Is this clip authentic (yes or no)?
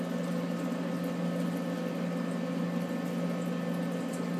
yes